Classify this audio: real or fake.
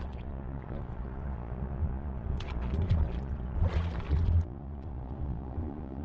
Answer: fake